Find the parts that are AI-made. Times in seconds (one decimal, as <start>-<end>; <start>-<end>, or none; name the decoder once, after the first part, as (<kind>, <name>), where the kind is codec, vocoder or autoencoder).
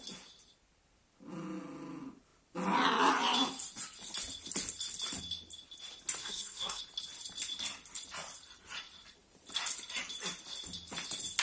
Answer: 6.2-6.8 (codec, SNAC)